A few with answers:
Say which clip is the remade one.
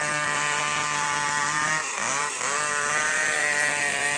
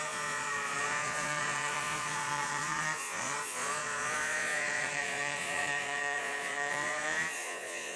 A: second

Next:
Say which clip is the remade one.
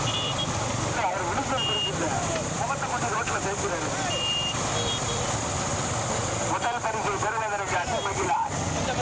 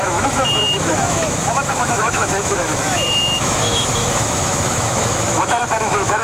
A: second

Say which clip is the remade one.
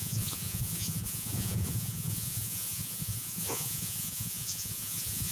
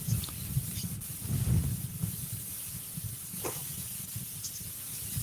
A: first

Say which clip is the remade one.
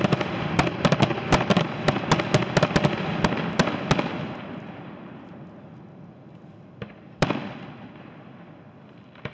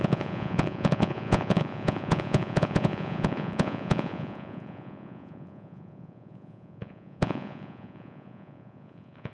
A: second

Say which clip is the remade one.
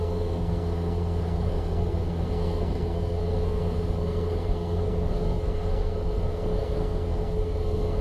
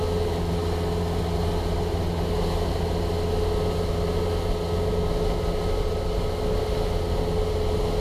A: first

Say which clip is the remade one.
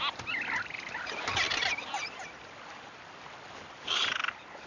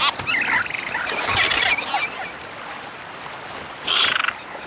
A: first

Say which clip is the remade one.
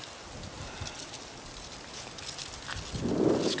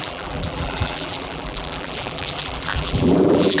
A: second